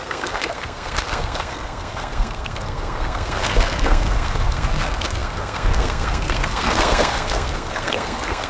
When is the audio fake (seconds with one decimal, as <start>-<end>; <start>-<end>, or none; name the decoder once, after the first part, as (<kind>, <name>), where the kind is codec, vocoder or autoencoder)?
0.0-8.5 (codec, SNAC)